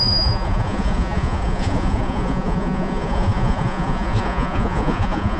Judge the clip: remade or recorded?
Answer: remade